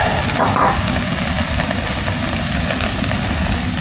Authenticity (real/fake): real